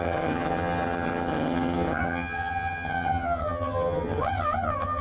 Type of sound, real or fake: fake